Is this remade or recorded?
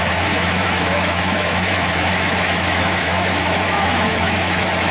remade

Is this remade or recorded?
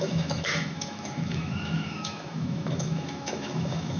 remade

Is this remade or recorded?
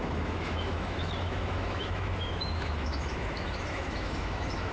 remade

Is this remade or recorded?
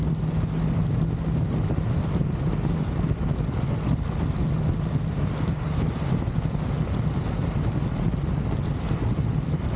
recorded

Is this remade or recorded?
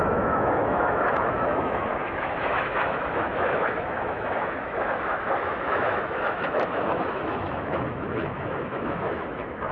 remade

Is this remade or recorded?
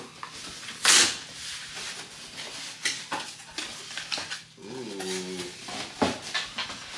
recorded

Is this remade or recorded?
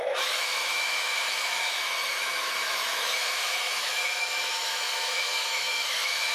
remade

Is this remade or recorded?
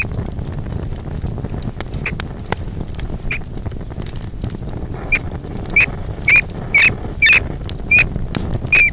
recorded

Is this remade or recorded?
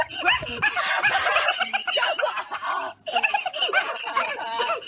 recorded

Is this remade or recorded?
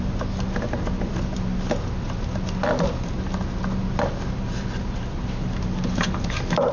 recorded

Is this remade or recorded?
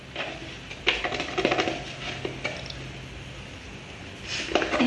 recorded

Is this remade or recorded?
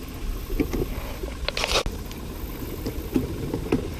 recorded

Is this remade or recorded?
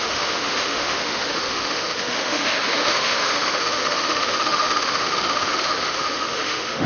remade